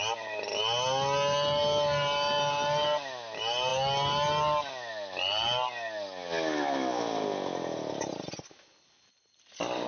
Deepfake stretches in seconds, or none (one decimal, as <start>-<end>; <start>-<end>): none